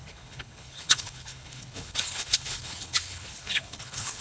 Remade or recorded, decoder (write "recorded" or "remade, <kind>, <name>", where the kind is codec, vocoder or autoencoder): remade, codec, HILCodec